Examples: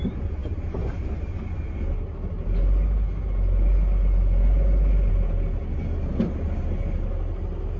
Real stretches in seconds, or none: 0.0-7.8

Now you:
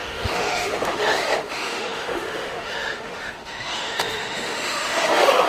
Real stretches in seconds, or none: none

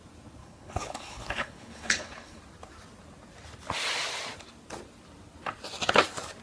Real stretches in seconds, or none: 0.0-0.4; 2.4-6.4